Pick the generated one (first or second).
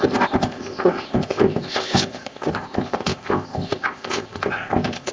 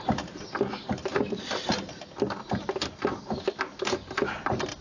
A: first